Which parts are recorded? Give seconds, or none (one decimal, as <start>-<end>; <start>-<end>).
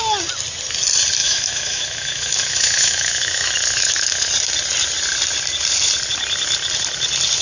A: 0.0-1.2; 4.3-7.4